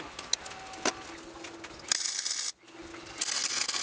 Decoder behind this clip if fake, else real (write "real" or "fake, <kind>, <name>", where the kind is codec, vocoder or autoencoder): real